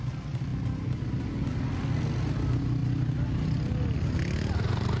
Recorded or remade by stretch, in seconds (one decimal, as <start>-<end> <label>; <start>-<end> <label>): 0.0-5.0 recorded